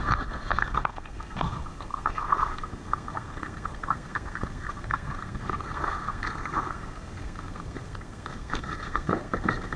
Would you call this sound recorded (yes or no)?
no